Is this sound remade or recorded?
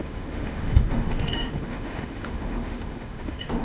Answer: remade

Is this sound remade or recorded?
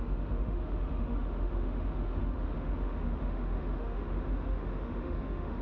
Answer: remade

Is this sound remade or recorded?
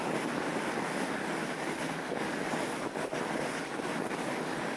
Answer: recorded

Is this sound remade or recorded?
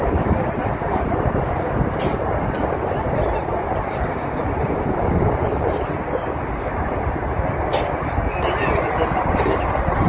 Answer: recorded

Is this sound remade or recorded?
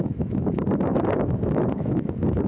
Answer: remade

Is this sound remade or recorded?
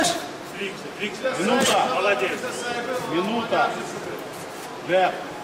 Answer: recorded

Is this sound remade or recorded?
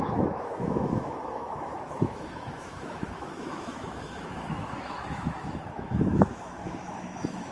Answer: remade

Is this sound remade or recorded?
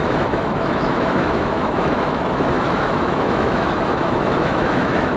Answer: remade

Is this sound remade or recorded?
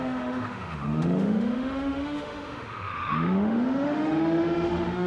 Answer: remade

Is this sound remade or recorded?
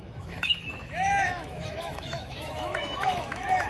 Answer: remade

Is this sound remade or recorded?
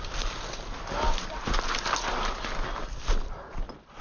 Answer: recorded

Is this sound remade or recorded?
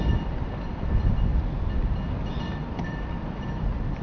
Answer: recorded